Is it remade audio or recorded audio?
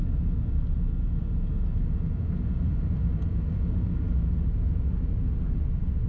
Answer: recorded